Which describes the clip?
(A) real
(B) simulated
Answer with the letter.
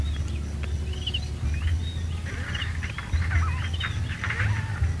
A